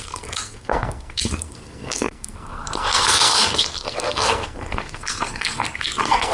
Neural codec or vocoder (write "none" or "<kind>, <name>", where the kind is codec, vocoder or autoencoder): codec, SNAC